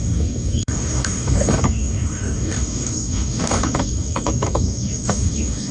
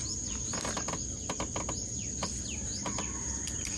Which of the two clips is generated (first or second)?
first